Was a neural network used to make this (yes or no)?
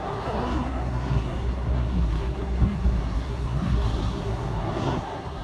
yes